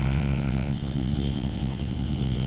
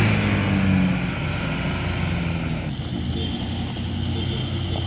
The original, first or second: second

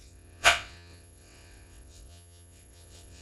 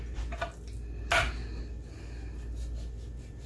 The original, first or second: second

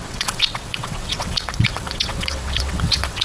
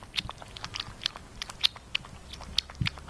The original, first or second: second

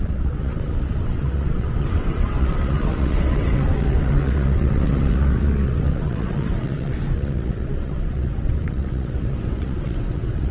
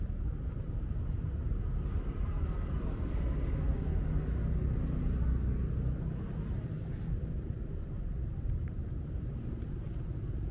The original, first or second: second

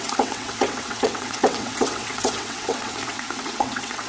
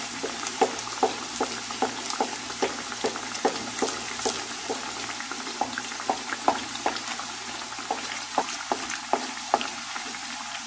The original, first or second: second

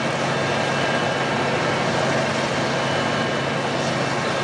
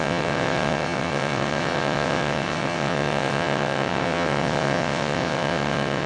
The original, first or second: first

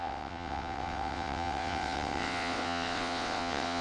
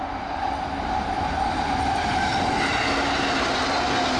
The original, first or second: second